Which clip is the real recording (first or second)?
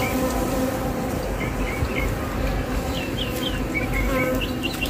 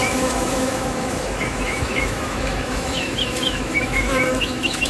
first